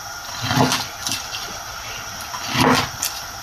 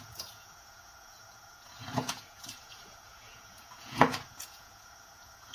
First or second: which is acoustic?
first